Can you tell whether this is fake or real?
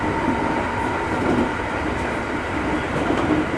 real